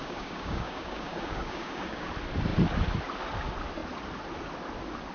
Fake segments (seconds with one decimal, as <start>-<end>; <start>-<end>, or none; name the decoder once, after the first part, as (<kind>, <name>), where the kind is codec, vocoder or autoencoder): 0.0-2.1 (codec, DAC)